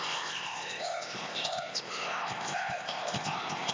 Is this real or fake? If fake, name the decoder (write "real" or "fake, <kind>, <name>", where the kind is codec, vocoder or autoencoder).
fake, codec, ZipCodec